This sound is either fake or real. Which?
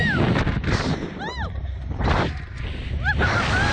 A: real